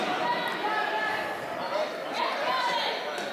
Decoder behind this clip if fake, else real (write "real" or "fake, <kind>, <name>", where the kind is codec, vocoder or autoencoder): real